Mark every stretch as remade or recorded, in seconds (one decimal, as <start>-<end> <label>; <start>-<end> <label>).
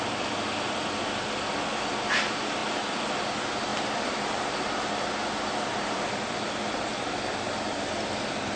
0.0-8.6 recorded